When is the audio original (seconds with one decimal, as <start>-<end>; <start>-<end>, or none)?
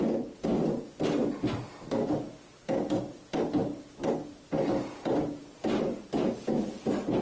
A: 0.0-7.2